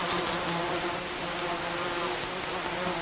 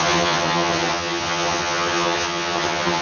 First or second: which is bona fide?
first